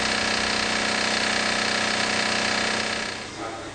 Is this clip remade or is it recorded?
recorded